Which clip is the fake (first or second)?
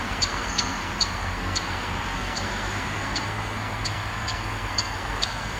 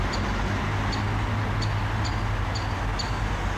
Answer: first